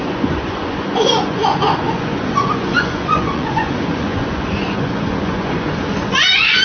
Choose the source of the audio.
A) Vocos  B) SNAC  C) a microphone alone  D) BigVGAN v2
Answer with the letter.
A